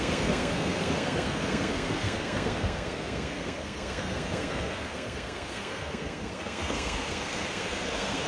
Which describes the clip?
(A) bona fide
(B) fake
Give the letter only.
B